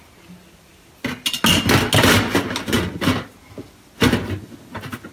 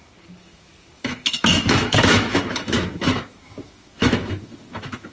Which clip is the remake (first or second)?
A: second